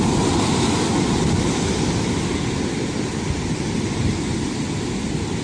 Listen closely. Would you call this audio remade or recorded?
recorded